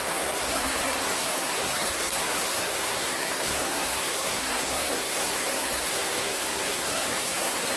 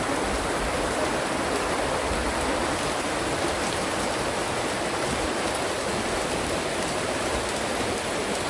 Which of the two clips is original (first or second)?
second